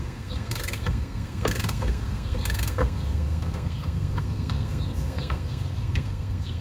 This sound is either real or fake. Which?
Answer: fake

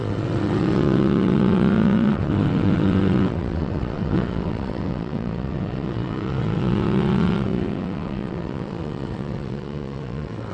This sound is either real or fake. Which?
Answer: fake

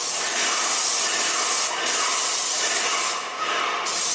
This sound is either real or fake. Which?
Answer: real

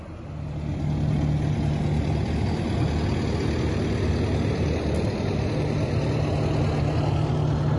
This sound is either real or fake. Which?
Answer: real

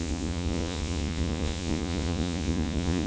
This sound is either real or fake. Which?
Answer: fake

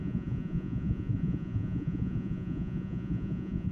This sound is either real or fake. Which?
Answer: fake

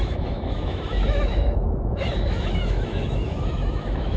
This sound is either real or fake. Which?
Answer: fake